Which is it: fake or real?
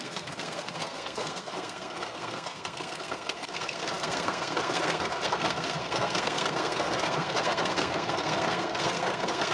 fake